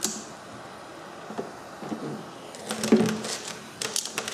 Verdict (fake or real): real